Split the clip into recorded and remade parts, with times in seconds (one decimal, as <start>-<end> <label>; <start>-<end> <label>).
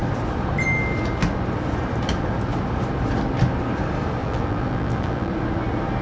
0.0-4.2 recorded; 4.2-5.3 remade; 5.3-6.0 recorded